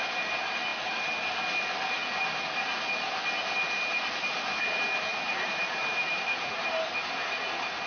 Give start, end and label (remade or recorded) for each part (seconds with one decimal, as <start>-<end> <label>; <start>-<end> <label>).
0.0-5.1 recorded; 5.1-6.9 remade; 6.9-7.9 recorded